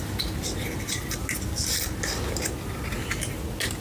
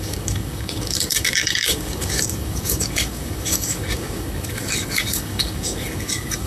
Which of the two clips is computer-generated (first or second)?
second